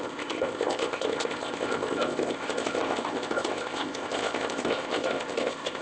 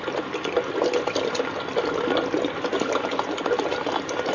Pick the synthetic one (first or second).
first